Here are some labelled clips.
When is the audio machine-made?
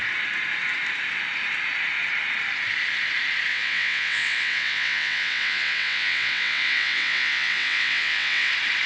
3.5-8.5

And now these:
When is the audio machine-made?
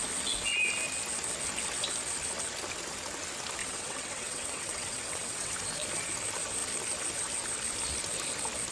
3.6-5.5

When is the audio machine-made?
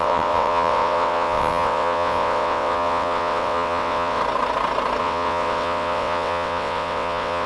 0.0-4.2; 5.0-7.5